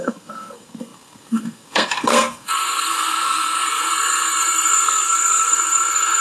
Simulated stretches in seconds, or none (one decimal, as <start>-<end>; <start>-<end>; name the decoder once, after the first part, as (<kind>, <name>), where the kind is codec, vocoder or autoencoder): 0.0-6.2 (codec, SNAC)